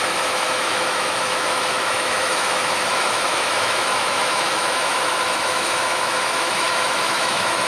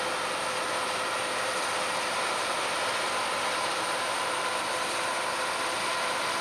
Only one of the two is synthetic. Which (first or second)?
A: first